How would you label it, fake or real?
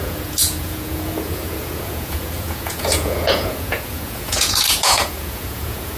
fake